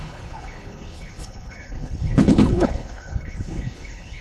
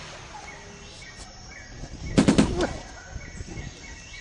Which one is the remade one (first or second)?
first